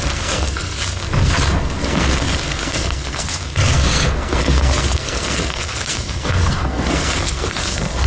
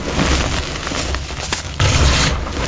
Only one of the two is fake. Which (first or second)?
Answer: first